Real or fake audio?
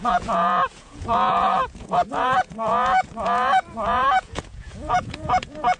fake